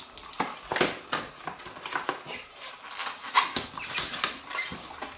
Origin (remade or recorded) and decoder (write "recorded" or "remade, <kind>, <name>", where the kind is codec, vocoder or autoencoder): recorded